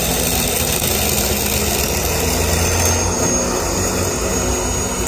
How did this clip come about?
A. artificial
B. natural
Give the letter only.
B